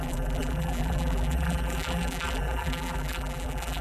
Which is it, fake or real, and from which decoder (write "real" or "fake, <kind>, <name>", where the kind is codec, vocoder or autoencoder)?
fake, vocoder, BigVGAN v2